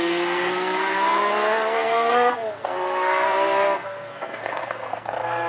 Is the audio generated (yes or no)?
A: yes